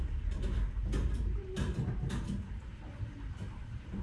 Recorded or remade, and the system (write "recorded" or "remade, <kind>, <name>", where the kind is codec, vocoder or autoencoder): recorded